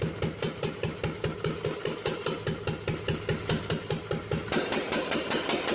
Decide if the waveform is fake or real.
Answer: real